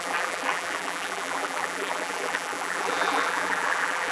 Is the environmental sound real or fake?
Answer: fake